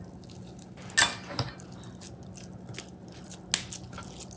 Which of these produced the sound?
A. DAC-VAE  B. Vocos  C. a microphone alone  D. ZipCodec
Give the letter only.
C